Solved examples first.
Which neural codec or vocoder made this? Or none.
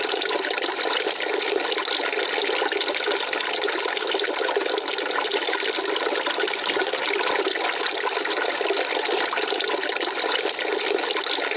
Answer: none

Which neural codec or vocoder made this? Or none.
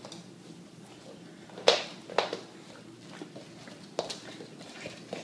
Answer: none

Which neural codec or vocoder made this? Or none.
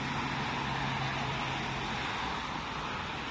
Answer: none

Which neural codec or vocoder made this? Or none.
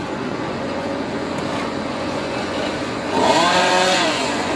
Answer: vocoder, Vocos